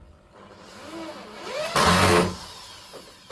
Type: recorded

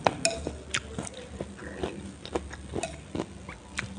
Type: recorded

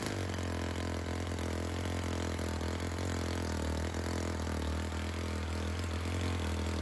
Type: recorded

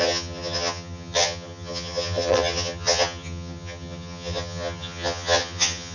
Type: remade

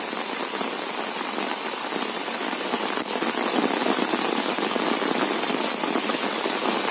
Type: recorded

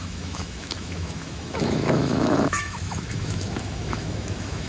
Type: remade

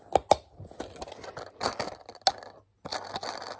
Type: recorded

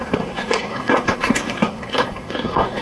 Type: remade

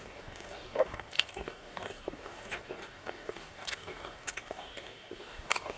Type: remade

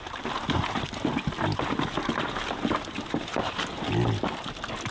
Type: recorded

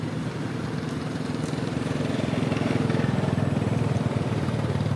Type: remade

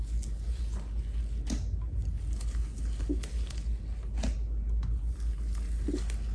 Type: recorded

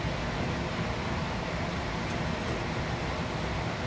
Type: recorded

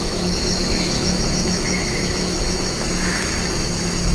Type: remade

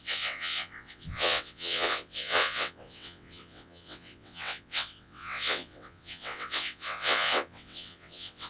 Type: remade